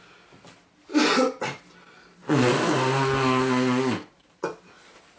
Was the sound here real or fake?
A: real